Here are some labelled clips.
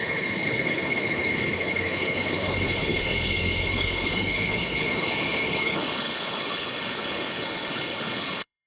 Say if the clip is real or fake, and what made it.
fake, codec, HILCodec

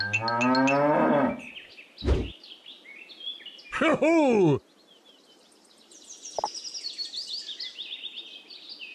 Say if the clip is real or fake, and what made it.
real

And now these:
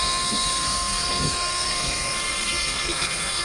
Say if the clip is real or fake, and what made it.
fake, codec, SNAC